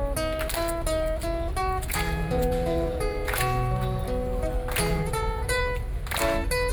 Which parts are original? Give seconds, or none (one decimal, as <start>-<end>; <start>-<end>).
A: 0.0-1.6; 4.0-4.9; 5.6-6.7